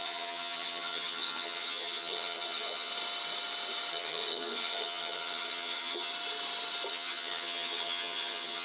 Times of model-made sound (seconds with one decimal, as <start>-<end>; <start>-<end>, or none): 0.0-2.9; 3.9-6.1; 6.9-8.6